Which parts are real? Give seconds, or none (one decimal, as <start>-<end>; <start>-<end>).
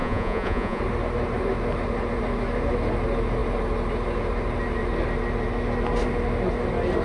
0.8-7.0